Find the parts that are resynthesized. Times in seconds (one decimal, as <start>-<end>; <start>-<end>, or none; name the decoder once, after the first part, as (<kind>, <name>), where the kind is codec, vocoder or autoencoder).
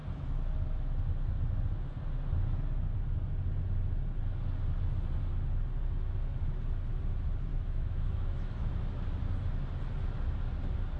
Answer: 7.5-8.7 (autoencoder, DAC-VAE)